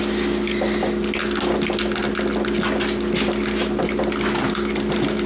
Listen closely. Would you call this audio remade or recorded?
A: recorded